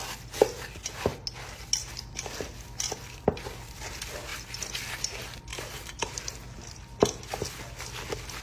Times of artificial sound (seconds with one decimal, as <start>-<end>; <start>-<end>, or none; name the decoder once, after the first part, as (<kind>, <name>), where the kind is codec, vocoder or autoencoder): 5.5-6.2 (vocoder, BigVGAN v2)